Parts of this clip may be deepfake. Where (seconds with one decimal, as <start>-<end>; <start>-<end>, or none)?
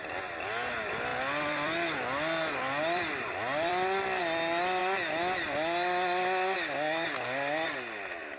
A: 1.1-4.2